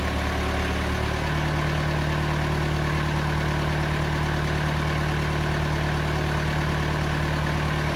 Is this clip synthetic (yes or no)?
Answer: no